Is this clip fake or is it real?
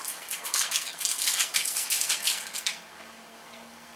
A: fake